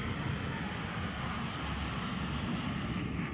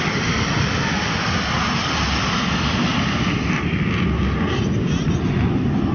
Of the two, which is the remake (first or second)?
second